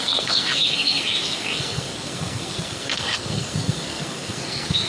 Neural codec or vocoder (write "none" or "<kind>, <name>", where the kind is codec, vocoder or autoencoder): codec, SNAC